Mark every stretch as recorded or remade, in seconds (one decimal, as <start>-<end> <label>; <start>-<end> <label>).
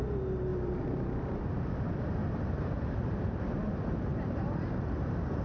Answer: 0.0-0.5 recorded; 0.5-1.4 remade; 1.4-2.2 recorded; 2.2-3.4 remade; 3.4-4.1 recorded; 4.1-4.7 remade; 4.7-5.4 recorded